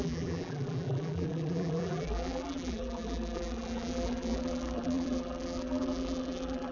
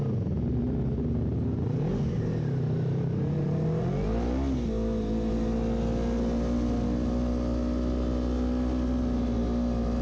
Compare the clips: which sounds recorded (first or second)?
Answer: second